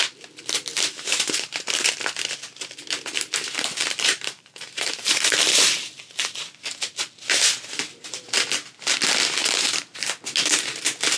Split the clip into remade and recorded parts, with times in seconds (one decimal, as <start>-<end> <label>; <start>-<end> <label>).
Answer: 0.0-0.7 recorded; 0.7-1.9 remade; 1.9-3.8 recorded; 3.8-6.0 remade; 6.0-9.4 recorded; 9.4-10.0 remade; 10.0-11.2 recorded